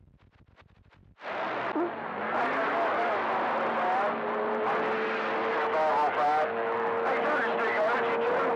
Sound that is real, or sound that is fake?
real